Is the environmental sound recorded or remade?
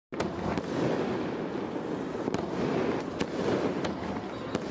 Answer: recorded